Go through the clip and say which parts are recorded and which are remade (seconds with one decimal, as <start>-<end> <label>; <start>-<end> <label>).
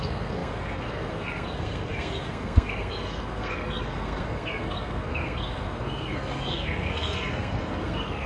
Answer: 0.0-8.3 remade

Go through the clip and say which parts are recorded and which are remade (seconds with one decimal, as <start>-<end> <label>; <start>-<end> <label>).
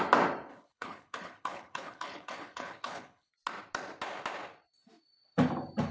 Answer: 0.0-0.5 recorded; 0.5-3.3 remade; 3.3-5.9 recorded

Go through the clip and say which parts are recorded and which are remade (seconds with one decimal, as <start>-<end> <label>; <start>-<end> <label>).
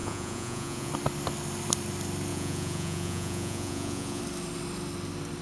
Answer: 0.0-0.9 remade; 0.9-2.3 recorded; 2.3-4.2 remade; 4.2-5.4 recorded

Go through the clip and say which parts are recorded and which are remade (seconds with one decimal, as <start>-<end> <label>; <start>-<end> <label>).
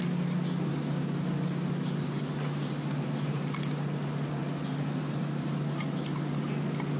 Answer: 0.0-7.0 recorded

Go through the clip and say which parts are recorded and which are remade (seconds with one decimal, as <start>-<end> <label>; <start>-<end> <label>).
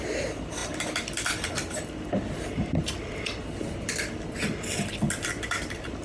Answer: 0.0-6.0 recorded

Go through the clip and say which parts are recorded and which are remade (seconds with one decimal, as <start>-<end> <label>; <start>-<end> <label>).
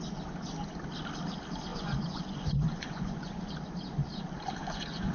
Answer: 0.0-1.7 recorded; 1.7-3.5 remade; 3.5-4.6 recorded; 4.6-5.1 remade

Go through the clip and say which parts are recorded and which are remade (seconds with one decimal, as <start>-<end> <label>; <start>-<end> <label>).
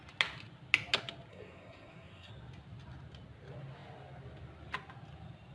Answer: 0.0-1.3 recorded; 1.3-2.3 remade; 2.3-5.5 recorded